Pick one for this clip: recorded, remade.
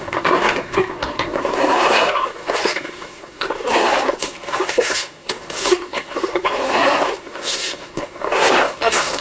remade